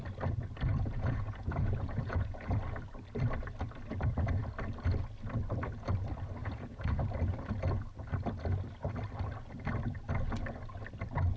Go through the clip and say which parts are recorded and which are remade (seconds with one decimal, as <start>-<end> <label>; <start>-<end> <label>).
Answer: 0.0-0.7 recorded; 0.7-2.6 remade; 2.6-6.4 recorded; 6.4-7.0 remade; 7.0-11.4 recorded